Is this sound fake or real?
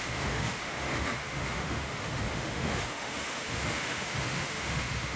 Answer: fake